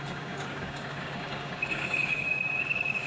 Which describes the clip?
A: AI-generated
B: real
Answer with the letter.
A